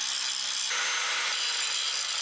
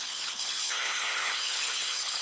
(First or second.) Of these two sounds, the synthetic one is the second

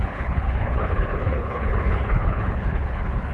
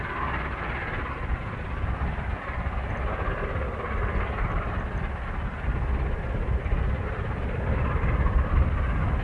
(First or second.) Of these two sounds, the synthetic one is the first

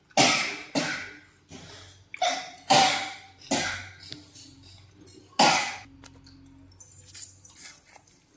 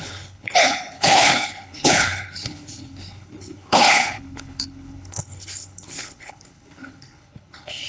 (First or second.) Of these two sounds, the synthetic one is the second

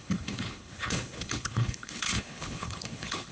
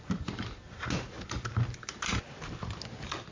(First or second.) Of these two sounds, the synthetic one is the first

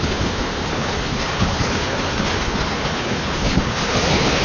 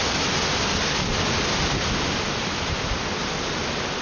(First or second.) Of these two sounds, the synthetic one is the first